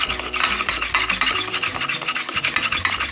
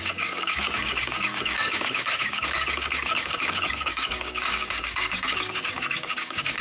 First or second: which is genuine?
first